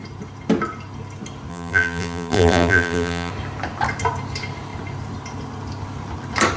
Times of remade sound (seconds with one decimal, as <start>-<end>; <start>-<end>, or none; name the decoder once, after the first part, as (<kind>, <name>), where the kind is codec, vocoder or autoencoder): 1.5-3.3 (vocoder, BigVGAN v2)